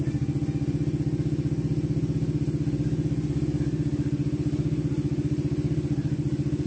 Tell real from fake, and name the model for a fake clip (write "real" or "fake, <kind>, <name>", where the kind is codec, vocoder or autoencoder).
real